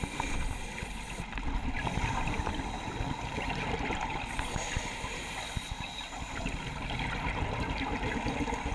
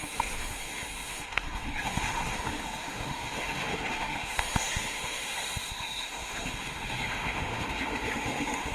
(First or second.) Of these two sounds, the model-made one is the second